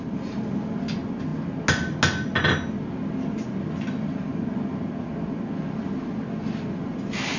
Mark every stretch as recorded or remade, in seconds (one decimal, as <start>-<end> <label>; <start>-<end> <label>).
0.0-7.4 recorded